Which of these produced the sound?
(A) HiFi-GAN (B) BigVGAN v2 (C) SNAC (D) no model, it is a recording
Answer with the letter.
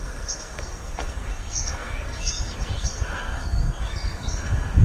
C